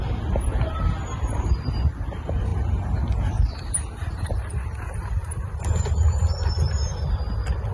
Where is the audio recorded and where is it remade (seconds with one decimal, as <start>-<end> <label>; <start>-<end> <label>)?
0.0-2.5 recorded; 2.5-7.1 remade; 7.1-7.7 recorded